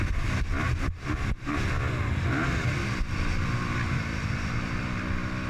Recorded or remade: recorded